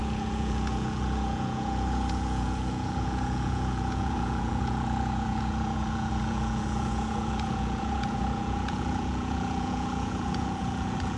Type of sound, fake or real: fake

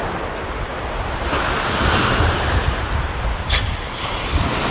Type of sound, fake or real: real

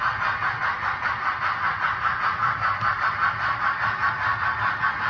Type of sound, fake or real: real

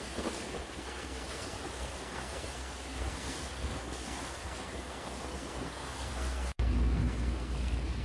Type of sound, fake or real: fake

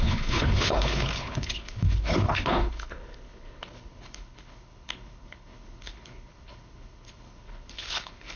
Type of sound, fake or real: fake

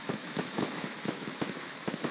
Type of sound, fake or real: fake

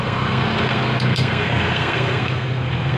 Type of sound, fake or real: fake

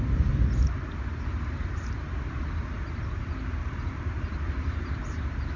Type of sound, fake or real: real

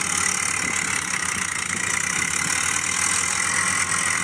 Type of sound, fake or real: real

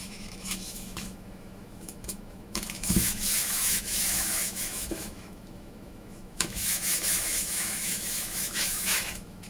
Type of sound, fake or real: fake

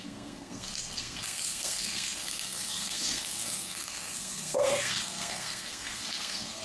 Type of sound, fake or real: fake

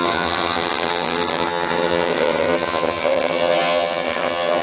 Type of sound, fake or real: fake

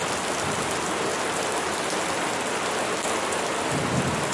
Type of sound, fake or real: real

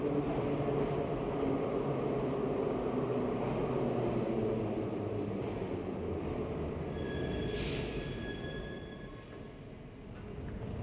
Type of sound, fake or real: real